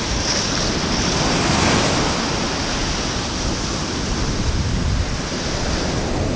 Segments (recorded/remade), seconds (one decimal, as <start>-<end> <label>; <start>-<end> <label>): 0.0-6.4 recorded